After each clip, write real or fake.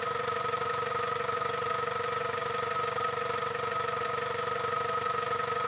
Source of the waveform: real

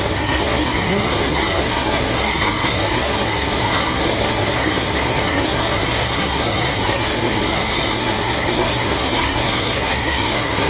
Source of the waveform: fake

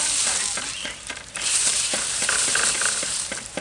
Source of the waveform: fake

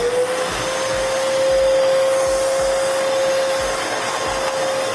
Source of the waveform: real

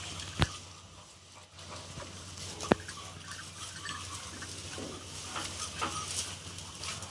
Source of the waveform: real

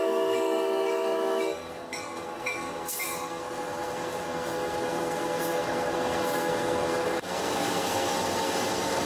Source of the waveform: fake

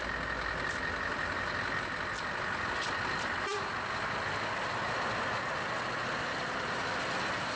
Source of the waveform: real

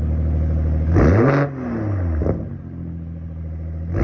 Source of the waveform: real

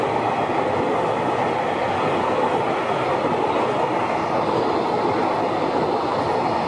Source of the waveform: real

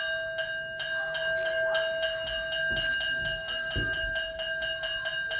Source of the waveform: real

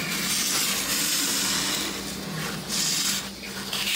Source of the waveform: real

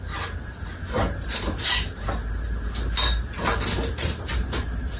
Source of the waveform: real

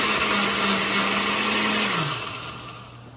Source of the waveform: real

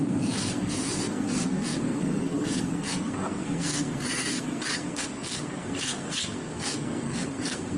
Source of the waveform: fake